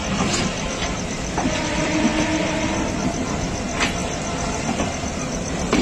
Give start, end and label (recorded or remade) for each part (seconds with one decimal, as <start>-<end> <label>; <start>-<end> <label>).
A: 0.0-2.1 remade; 2.1-2.9 recorded; 2.9-5.8 remade